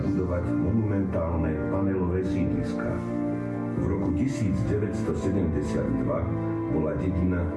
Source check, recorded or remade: recorded